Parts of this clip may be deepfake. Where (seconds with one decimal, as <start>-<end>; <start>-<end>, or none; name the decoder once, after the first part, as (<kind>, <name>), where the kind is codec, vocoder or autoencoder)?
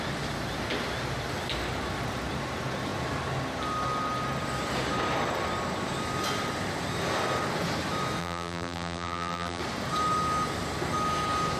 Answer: 8.2-9.6 (vocoder, BigVGAN v2)